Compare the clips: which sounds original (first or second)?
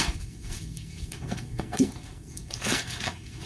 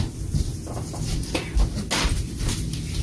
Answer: second